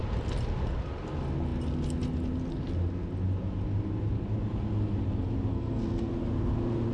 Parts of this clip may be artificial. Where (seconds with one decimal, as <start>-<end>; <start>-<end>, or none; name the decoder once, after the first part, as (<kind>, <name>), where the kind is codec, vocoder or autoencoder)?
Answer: 5.5-6.1 (codec, SNAC)

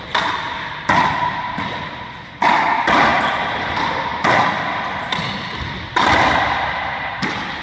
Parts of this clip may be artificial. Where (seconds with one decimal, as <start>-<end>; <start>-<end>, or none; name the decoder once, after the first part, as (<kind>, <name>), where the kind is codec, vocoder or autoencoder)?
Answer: none